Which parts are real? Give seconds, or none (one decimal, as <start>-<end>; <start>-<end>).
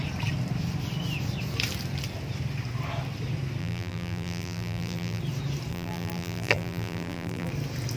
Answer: 0.0-3.6; 5.2-5.7; 7.5-8.0